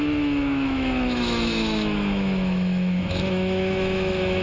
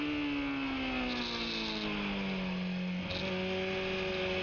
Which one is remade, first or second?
first